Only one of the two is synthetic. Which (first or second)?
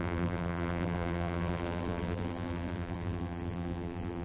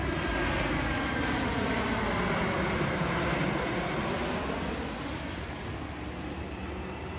first